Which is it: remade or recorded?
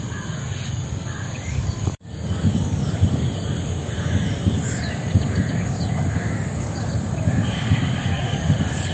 remade